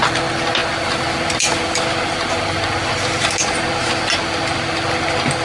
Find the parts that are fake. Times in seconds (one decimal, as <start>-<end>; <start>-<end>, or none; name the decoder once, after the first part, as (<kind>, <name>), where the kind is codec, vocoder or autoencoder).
none